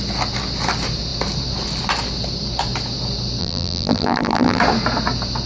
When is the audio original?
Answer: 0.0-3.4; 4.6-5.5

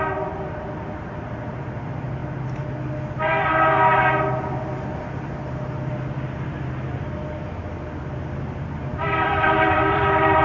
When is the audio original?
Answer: 0.0-8.9; 10.0-10.4

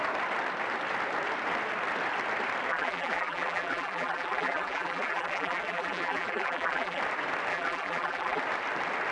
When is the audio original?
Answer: 0.0-2.7; 7.0-7.5; 8.4-9.1

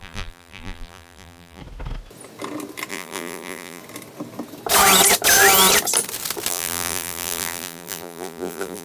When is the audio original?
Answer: 1.6-2.9; 3.8-6.5